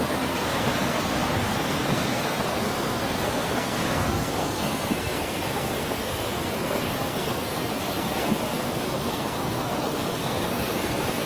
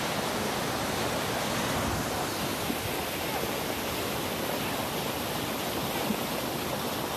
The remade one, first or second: first